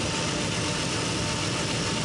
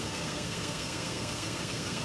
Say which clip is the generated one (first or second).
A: second